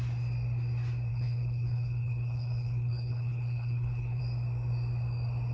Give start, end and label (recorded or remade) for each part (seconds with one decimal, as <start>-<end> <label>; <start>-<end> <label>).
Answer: 0.0-1.1 recorded; 1.1-4.2 remade; 4.2-5.5 recorded